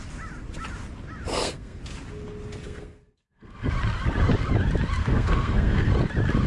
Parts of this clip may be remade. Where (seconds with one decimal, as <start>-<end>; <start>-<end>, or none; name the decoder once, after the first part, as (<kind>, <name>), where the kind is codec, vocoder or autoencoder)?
1.3-1.8 (codec, SNAC); 2.6-3.7; 5.0-5.9